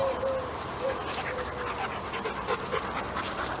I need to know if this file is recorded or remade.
recorded